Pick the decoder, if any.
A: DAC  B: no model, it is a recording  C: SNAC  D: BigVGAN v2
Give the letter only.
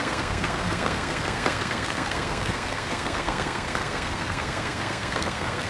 C